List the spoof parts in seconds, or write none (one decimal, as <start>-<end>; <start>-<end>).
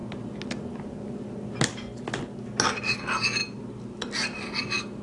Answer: none